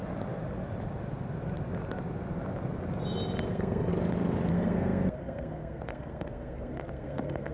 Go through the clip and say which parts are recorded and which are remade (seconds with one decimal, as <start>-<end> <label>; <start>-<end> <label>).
0.0-3.5 recorded; 3.5-3.9 remade; 3.9-4.5 recorded; 4.5-7.5 remade